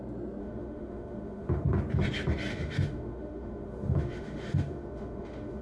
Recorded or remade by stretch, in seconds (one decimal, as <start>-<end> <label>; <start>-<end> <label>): 0.0-0.4 recorded; 0.4-1.8 remade; 1.8-2.5 recorded; 2.5-5.6 remade